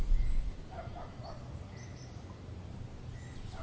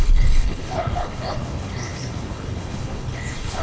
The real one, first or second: first